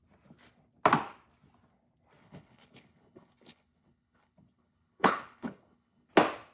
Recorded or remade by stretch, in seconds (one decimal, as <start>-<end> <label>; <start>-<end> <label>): 0.0-2.2 recorded; 2.2-6.1 remade; 6.1-6.5 recorded